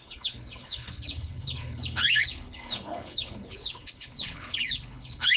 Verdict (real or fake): fake